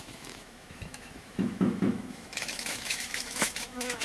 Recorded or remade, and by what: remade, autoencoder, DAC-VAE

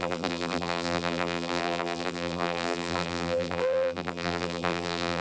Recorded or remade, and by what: remade, vocoder, BigVGAN v2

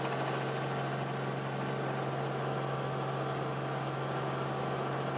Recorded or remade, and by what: recorded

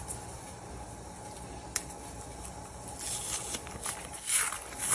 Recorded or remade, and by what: recorded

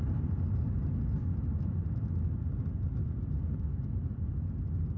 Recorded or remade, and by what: recorded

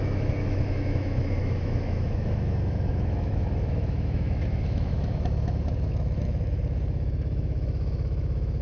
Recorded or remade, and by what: remade, autoencoder, DAC-VAE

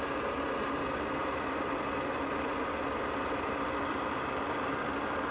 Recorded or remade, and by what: recorded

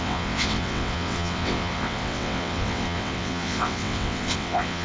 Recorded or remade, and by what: remade, vocoder, WaveNeXt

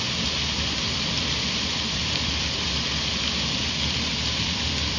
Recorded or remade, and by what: remade, vocoder, BigVGAN v2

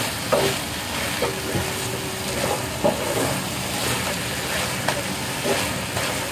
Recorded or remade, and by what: recorded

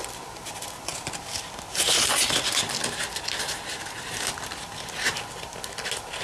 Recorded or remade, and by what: recorded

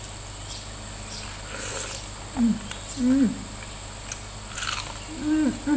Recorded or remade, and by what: recorded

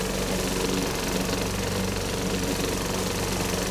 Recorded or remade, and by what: recorded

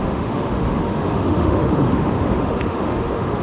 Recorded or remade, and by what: remade, autoencoder, DAC-VAE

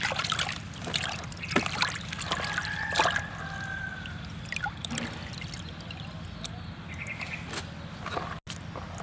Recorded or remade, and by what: recorded